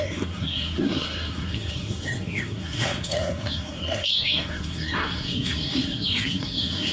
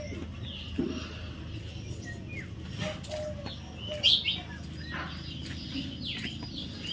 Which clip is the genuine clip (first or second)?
second